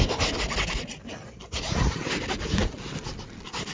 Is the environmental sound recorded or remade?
recorded